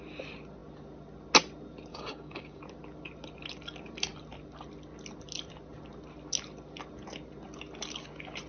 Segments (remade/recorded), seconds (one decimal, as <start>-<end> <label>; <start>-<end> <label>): 0.0-1.9 recorded; 1.9-2.6 remade; 2.6-8.5 recorded